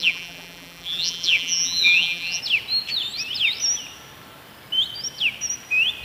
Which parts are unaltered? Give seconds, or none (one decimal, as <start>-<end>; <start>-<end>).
2.4-6.0